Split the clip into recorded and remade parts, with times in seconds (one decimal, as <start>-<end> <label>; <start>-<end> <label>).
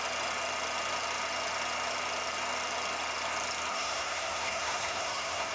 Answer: 0.0-3.7 recorded; 3.7-5.5 remade